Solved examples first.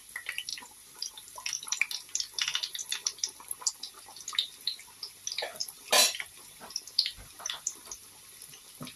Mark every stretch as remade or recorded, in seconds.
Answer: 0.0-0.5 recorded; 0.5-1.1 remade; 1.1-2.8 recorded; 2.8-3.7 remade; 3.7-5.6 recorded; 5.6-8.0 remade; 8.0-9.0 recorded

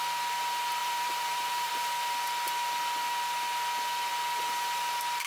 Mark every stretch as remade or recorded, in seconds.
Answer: 0.0-0.8 recorded; 0.8-1.7 remade; 1.7-5.3 recorded

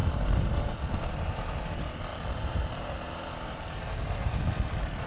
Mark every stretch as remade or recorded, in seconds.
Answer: 0.0-0.7 remade; 0.7-2.1 recorded; 2.1-4.4 remade; 4.4-5.1 recorded